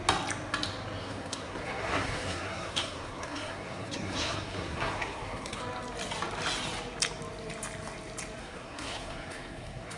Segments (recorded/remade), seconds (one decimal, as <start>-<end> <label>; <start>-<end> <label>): 0.0-1.0 recorded; 1.0-5.6 remade; 5.6-8.4 recorded; 8.4-10.0 remade